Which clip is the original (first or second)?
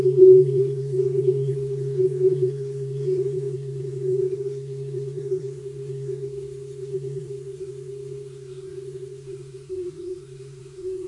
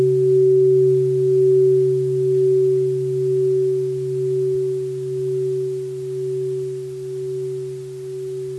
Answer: second